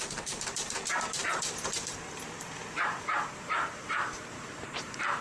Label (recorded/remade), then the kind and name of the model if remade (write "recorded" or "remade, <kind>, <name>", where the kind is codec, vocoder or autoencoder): remade, vocoder, BigVGAN v2